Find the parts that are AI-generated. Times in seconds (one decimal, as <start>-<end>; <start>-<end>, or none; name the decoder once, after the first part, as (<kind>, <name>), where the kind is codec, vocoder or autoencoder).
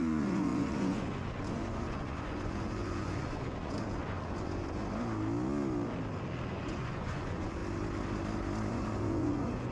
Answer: 0.0-4.8 (vocoder, Vocos); 6.5-7.6; 8.7-9.7